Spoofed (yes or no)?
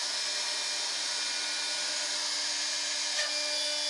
no